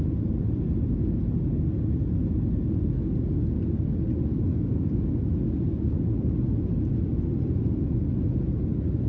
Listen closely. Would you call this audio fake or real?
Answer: real